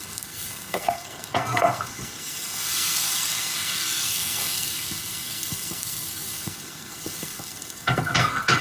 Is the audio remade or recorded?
remade